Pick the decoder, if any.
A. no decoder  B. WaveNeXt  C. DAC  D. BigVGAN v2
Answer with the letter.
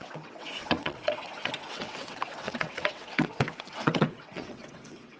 B